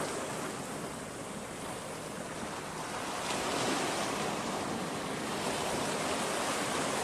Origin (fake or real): real